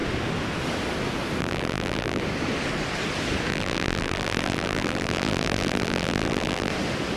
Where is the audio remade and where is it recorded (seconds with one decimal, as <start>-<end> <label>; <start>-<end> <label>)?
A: 0.0-1.4 recorded; 1.4-2.2 remade; 2.2-3.5 recorded; 3.5-6.7 remade; 6.7-7.2 recorded

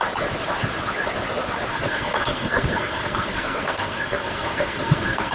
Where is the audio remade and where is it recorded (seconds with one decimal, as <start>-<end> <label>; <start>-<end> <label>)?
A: 0.0-1.7 recorded; 1.7-5.3 remade